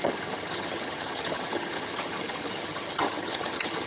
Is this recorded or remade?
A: remade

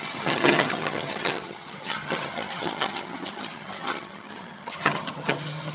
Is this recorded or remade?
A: remade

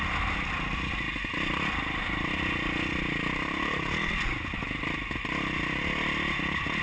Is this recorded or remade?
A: recorded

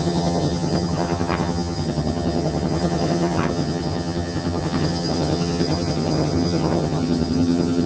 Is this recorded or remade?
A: remade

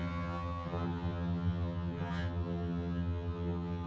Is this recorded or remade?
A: remade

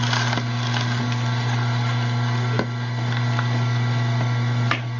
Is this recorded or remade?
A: recorded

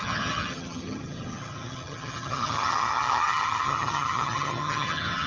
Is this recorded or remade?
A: remade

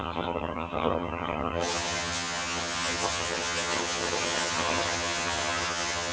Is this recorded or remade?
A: remade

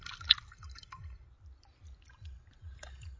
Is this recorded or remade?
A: recorded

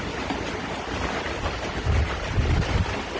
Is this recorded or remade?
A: recorded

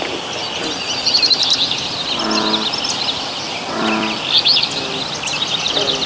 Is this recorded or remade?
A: recorded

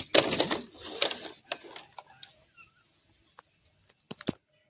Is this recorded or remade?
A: recorded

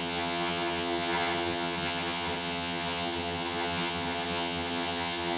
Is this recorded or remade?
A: remade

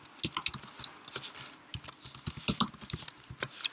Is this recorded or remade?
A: recorded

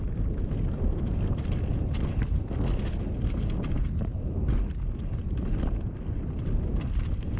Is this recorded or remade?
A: recorded